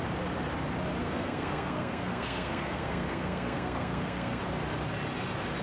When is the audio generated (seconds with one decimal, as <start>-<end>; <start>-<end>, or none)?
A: 1.0-4.4